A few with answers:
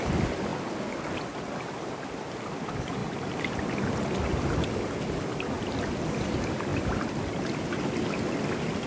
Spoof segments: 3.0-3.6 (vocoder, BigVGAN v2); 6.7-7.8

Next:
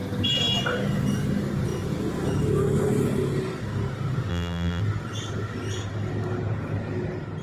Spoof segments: 4.3-4.8 (vocoder, BigVGAN v2)